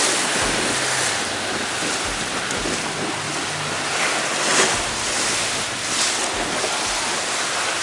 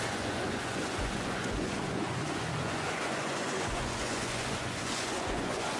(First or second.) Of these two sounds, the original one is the first